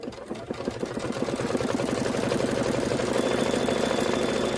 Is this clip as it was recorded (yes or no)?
yes